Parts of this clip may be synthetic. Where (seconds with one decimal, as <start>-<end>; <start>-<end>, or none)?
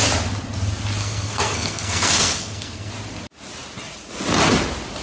1.0-2.9